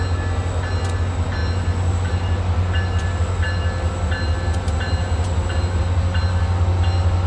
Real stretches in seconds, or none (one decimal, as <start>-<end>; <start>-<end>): 0.0-7.3